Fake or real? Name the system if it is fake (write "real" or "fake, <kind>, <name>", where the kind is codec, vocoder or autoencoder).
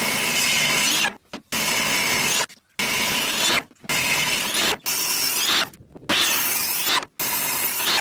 real